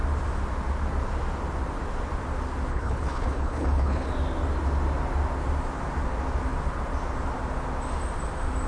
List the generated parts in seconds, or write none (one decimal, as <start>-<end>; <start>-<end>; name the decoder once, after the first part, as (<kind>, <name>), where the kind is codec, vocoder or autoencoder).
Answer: 2.7-4.1 (codec, HILCodec)